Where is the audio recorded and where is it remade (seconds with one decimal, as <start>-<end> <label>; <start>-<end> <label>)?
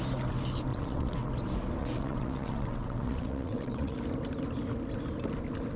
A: 0.0-0.7 recorded; 0.7-1.3 remade; 1.3-1.8 recorded; 1.8-4.0 remade; 4.0-5.8 recorded